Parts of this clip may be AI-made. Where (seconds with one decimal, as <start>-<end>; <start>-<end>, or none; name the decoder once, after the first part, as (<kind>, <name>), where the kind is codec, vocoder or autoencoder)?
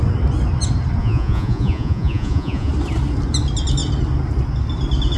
1.0-2.7 (vocoder, Vocos)